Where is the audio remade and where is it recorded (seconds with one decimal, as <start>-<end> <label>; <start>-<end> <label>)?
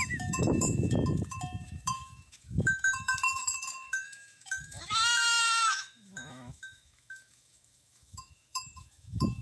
0.0-9.4 remade